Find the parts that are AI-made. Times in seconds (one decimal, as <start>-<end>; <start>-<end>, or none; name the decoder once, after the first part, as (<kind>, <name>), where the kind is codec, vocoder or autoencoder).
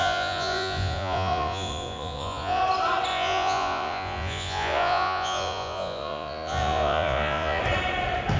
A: 0.0-2.6 (vocoder, Vocos); 3.1-7.6